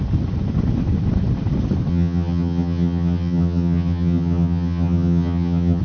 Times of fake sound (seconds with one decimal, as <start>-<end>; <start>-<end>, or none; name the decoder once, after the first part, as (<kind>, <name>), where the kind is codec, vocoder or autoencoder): 1.9-5.8 (vocoder, HiFi-GAN)